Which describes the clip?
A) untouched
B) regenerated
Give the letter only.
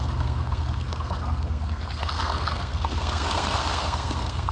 B